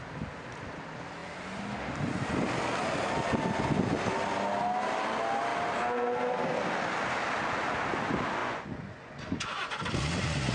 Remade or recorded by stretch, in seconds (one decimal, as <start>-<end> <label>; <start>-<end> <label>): 0.0-8.4 recorded; 8.4-9.8 remade; 9.8-10.5 recorded